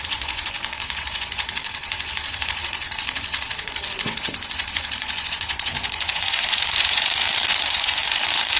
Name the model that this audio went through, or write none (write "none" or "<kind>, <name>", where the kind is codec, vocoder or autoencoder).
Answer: vocoder, Vocos